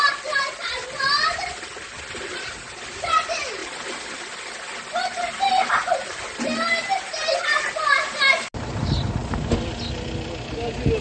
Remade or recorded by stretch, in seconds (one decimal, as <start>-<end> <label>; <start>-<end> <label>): 0.0-11.0 recorded